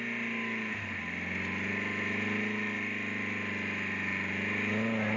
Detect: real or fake real